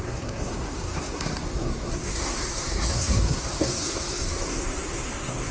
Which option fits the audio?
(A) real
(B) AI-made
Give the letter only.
B